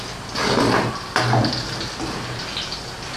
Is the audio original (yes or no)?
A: yes